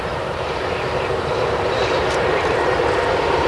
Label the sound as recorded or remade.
remade